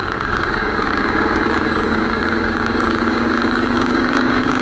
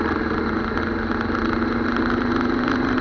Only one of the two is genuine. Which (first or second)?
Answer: second